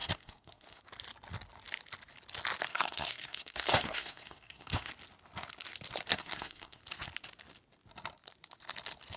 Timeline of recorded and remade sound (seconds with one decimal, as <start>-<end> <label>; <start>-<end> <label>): 0.0-0.8 remade; 0.8-2.7 recorded; 2.7-4.9 remade; 4.9-6.1 recorded; 6.1-6.8 remade; 6.8-9.2 recorded